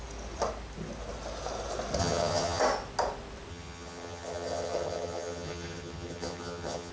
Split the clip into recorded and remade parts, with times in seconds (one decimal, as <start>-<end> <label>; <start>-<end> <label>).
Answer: 0.0-2.0 recorded; 2.0-2.6 remade; 2.6-3.5 recorded; 3.5-6.9 remade